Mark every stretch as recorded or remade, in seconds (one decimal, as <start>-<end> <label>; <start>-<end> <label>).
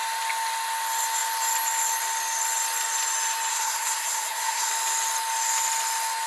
0.0-3.5 recorded; 3.5-4.7 remade; 4.7-6.3 recorded